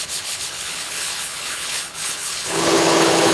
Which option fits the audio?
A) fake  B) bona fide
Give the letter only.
A